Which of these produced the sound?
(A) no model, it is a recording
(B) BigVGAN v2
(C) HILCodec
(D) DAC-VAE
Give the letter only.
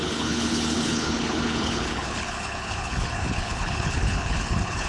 C